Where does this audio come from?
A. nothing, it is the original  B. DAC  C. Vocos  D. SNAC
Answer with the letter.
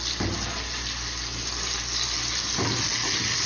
A